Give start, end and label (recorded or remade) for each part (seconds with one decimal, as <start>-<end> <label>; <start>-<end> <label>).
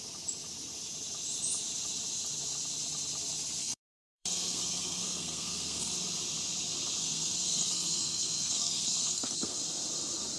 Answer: 0.0-3.6 recorded; 3.6-5.9 remade; 5.9-7.0 recorded; 7.0-9.6 remade; 9.6-10.4 recorded